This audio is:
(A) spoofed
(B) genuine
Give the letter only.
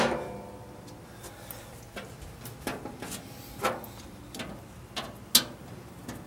B